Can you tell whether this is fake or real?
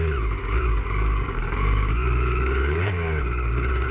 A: fake